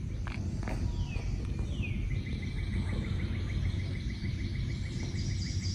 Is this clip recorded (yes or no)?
yes